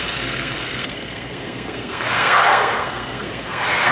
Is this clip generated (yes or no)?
yes